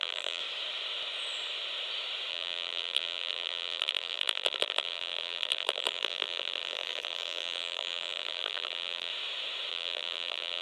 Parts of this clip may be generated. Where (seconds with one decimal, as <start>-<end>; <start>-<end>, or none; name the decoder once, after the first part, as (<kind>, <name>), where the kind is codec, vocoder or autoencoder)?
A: 0.0-0.4 (vocoder, BigVGAN v2); 2.3-9.1; 9.7-10.6